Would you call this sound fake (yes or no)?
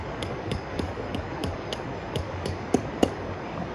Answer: yes